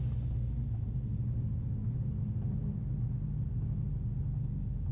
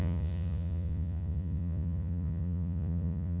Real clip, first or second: first